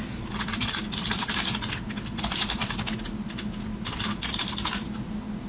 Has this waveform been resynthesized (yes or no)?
no